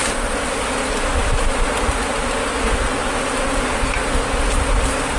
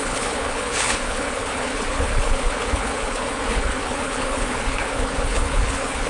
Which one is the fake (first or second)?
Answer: second